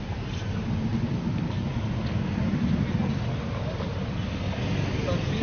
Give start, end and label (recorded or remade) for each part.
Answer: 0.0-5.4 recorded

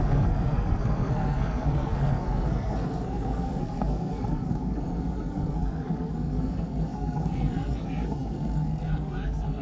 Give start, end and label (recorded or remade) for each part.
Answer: 0.0-9.6 remade

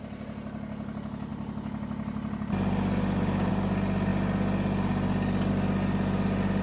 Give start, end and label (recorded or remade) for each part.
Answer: 0.0-6.6 recorded